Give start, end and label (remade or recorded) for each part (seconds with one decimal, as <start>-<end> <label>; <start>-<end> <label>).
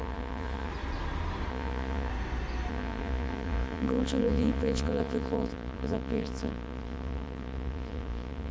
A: 0.0-0.7 remade; 0.7-1.5 recorded; 1.5-2.1 remade; 2.1-2.7 recorded; 2.7-8.5 remade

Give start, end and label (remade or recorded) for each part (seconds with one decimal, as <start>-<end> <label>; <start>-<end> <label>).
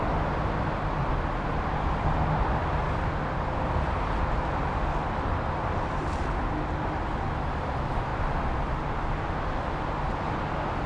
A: 0.0-10.9 recorded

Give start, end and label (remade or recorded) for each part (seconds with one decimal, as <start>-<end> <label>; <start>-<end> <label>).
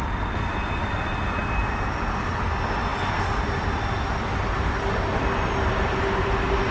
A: 0.0-6.7 recorded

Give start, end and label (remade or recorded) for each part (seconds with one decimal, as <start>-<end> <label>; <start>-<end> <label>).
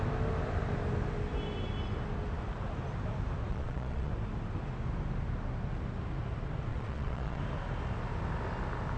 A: 0.0-3.5 recorded; 3.5-4.1 remade; 4.1-6.7 recorded; 6.7-7.4 remade; 7.4-9.0 recorded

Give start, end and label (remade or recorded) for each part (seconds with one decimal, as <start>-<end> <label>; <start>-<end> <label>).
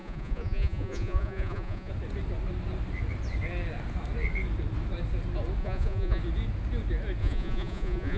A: 0.0-1.9 remade; 1.9-5.6 recorded; 5.6-6.2 remade; 6.2-7.2 recorded; 7.2-8.2 remade